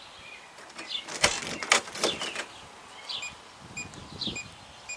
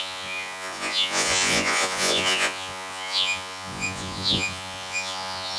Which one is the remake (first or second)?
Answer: second